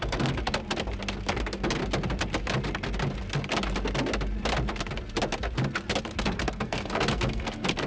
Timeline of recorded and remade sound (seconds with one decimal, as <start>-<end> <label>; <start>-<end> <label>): 0.0-0.6 remade; 0.6-1.2 recorded; 1.2-1.8 remade; 1.8-6.2 recorded; 6.2-7.9 remade